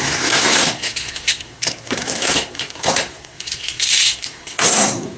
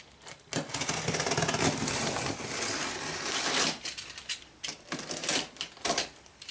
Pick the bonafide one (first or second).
second